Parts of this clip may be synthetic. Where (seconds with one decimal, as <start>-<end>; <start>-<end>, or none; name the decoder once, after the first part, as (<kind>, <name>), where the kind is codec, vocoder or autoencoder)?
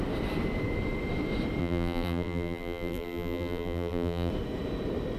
1.6-4.3 (vocoder, BigVGAN v2)